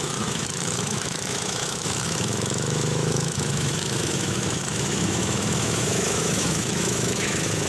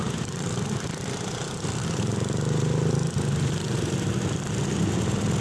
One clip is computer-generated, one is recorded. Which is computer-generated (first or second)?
first